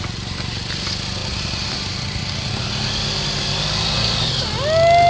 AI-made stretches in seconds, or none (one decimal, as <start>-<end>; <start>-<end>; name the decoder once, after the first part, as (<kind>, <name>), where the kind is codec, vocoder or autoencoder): none